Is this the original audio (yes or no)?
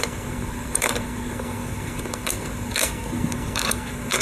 no